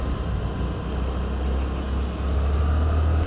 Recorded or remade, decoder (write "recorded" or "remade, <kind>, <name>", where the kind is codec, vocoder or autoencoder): recorded